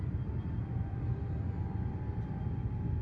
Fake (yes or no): no